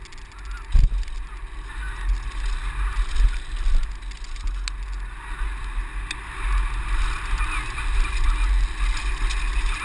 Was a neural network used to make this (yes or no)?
no